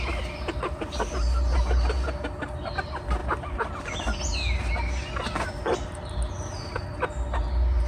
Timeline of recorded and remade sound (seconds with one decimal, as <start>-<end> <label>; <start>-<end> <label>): 0.0-7.9 recorded